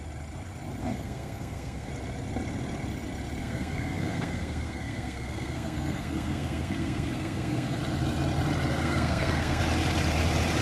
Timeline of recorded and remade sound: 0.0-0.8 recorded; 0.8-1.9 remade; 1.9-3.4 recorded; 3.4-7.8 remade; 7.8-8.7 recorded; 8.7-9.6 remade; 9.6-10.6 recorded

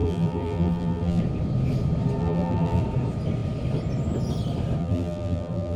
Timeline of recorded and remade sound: 0.0-1.2 remade; 1.2-2.2 recorded; 2.2-2.8 remade; 2.8-4.8 recorded; 4.8-5.8 remade

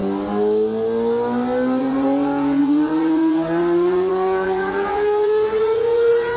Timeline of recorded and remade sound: 0.0-1.8 recorded; 1.8-6.4 remade

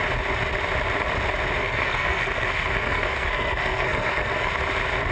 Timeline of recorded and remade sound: 0.0-1.6 recorded; 1.6-4.5 remade; 4.5-5.1 recorded